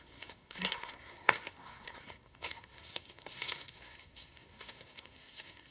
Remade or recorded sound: remade